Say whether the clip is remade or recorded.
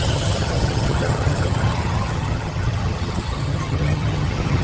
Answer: remade